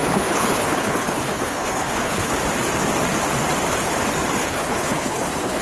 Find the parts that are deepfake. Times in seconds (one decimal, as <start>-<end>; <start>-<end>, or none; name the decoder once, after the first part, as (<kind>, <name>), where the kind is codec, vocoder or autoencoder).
0.0-2.3 (codec, HILCodec); 4.4-5.6